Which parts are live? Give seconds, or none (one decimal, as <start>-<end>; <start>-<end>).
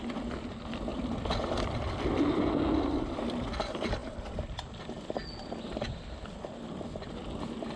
0.0-7.8